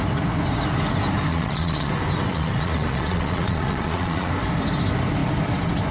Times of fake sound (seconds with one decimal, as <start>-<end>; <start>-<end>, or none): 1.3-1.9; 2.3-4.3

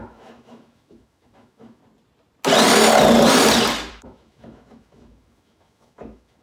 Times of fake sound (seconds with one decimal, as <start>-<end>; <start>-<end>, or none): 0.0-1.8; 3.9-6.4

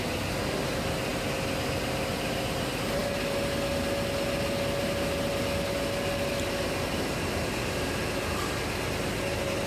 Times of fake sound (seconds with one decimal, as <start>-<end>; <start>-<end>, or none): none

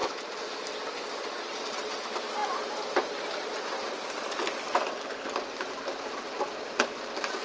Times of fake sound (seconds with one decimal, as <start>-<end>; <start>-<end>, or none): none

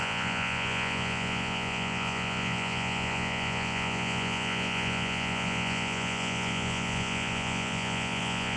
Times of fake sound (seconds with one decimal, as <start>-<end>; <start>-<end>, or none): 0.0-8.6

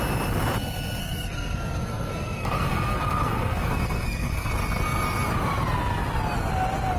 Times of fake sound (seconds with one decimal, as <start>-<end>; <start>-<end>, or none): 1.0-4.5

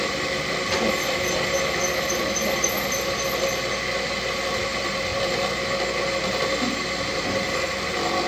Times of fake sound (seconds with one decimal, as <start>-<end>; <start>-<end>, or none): none

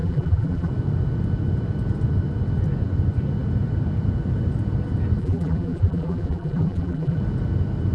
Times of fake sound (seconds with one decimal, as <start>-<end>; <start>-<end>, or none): 0.0-0.7; 5.2-7.2